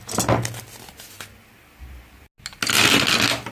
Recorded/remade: recorded